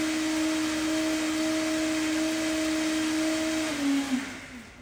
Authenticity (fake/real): real